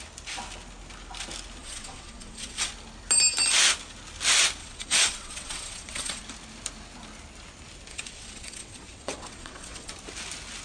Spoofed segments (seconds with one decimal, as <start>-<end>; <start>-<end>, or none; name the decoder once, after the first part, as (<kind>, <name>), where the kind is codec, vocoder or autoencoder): 1.6-2.7 (vocoder, WaveNeXt); 4.6-6.2; 7.9-9.9